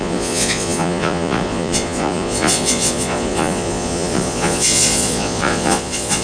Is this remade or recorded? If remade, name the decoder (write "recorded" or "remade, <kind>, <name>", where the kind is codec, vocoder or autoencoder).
remade, vocoder, Vocos